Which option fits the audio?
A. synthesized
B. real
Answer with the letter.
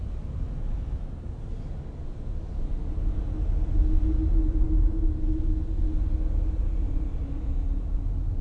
B